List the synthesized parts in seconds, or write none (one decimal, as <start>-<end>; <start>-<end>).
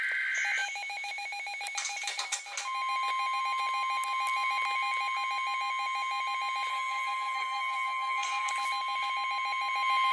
6.7-8.5